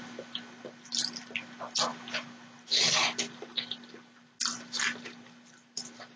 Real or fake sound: real